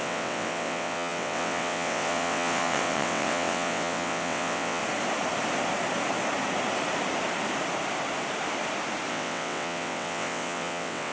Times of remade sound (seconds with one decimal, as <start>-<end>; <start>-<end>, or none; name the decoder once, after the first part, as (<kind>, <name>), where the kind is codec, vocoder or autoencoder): 0.0-4.8 (vocoder, WaveNeXt); 9.1-11.1